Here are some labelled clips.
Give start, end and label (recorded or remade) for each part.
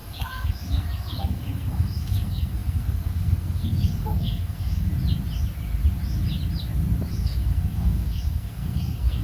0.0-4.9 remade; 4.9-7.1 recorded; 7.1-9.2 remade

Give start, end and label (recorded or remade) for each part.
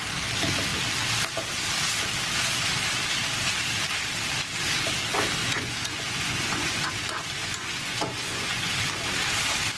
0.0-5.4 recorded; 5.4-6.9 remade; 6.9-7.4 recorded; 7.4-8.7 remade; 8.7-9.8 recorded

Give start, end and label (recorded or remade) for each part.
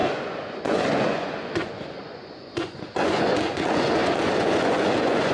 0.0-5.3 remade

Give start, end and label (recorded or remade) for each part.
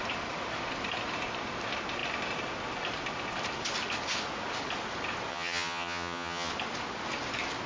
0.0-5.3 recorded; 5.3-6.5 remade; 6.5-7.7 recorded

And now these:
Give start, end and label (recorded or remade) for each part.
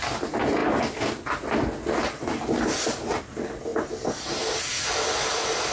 0.0-5.7 recorded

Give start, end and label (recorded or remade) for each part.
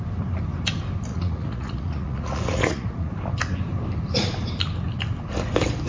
0.0-1.1 recorded; 1.1-3.1 remade; 3.1-5.9 recorded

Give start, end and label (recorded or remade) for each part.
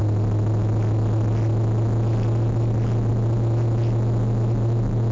0.0-5.1 recorded